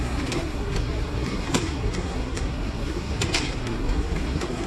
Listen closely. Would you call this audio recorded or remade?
remade